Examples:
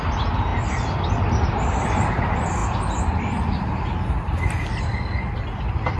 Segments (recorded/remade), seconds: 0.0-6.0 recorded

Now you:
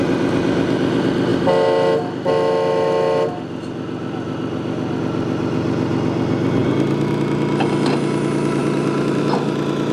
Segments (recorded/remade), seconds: 0.0-8.6 recorded; 8.6-9.2 remade; 9.2-9.9 recorded

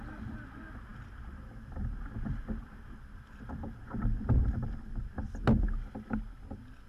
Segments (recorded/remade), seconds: 0.0-0.9 recorded; 0.9-5.0 remade; 5.0-6.9 recorded

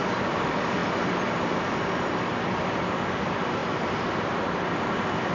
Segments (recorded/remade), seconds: 0.0-5.3 recorded

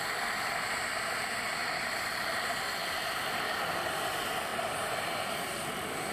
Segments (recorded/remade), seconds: 0.0-1.6 recorded; 1.6-2.4 remade; 2.4-6.1 recorded

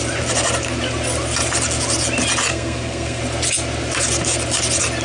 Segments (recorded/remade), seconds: 0.0-2.5 recorded; 2.5-3.2 remade; 3.2-5.0 recorded